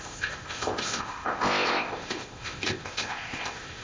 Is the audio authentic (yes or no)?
no